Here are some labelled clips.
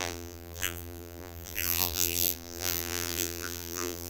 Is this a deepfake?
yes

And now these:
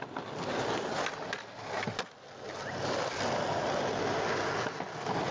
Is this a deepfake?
no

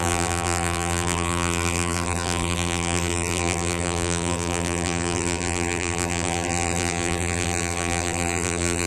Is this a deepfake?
yes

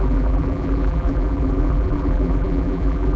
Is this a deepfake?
yes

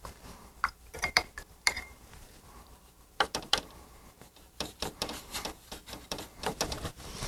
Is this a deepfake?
yes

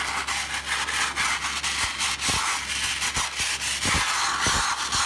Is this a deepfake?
no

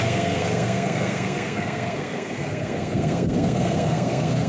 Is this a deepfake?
yes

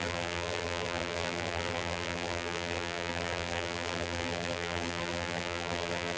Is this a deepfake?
yes